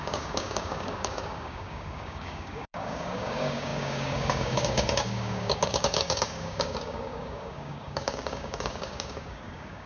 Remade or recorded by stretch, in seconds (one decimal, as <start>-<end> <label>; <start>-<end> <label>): 0.0-9.9 remade